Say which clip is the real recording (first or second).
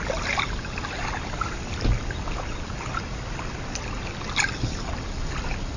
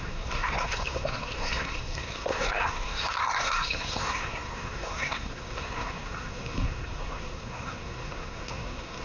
first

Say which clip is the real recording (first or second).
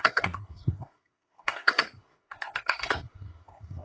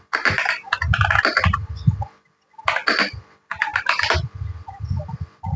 second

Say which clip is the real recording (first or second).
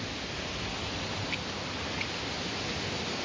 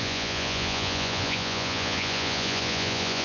first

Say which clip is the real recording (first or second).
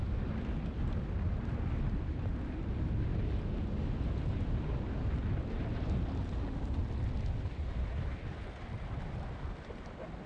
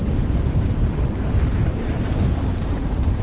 first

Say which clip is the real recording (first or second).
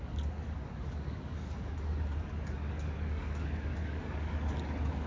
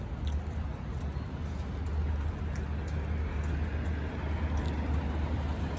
second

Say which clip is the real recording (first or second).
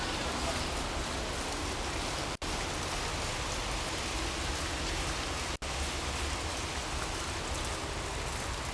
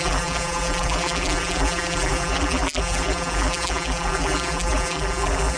first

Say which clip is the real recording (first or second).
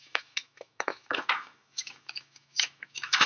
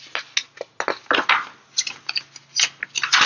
second